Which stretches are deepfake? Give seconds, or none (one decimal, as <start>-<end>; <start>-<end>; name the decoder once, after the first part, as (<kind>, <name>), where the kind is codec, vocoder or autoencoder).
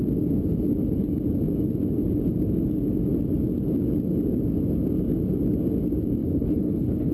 6.2-7.1 (codec, HILCodec)